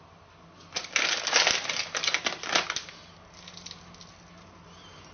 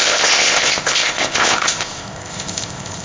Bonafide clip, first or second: first